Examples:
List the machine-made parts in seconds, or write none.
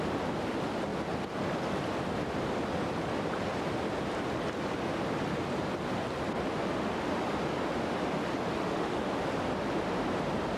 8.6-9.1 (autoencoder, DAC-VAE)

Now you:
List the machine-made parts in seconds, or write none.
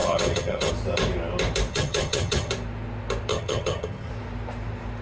0.0-0.7 (vocoder, HiFi-GAN); 1.7-2.5; 3.3-4.1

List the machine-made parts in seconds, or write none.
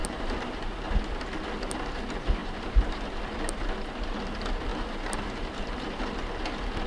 0.0-0.9 (vocoder, BigVGAN v2); 2.4-3.6; 4.7-6.0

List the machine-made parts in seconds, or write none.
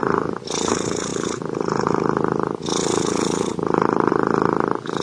none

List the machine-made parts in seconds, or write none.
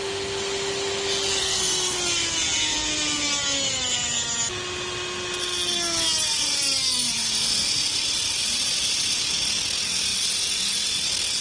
1.4-2.0 (codec, SNAC)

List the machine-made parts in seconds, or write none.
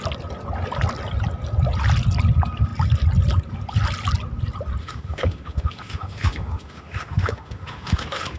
4.8-8.4 (autoencoder, DAC-VAE)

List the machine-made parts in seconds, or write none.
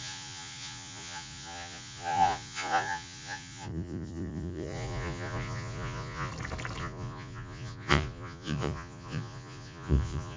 0.0-6.3 (vocoder, Vocos); 6.8-10.4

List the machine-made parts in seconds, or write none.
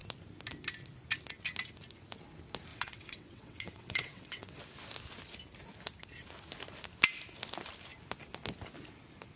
2.7-4.6 (vocoder, WaveNeXt)